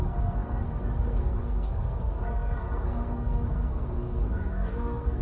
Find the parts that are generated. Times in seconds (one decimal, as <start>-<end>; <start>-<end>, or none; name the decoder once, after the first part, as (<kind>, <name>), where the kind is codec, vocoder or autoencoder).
0.0-5.2 (codec, SNAC)